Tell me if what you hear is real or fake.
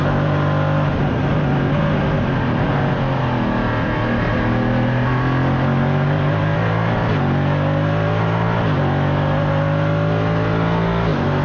real